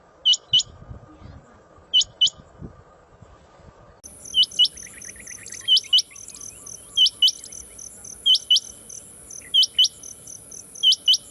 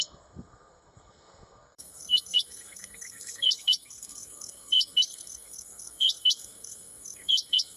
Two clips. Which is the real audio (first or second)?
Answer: first